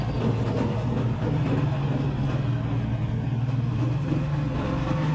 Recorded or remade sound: recorded